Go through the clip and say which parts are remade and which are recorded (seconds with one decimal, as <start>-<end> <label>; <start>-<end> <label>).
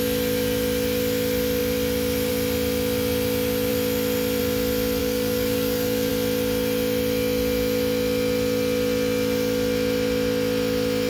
0.0-5.0 recorded; 5.0-6.1 remade; 6.1-11.1 recorded